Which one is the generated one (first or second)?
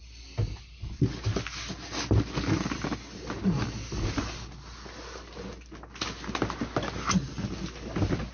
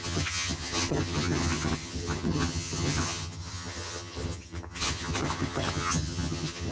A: second